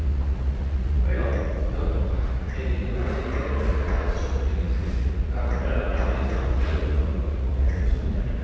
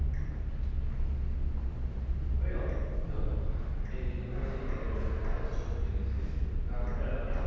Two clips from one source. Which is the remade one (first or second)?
first